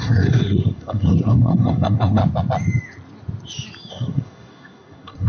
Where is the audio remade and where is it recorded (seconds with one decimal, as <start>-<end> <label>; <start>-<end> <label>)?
0.0-2.2 remade; 2.2-3.9 recorded; 3.9-5.3 remade